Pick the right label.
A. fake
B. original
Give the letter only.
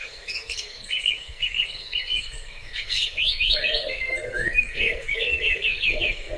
A